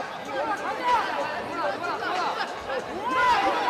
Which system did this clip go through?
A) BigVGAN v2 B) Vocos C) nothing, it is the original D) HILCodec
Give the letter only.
C